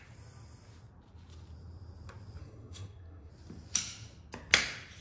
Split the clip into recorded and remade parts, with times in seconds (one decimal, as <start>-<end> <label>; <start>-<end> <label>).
0.0-2.4 recorded; 2.4-3.3 remade; 3.3-5.0 recorded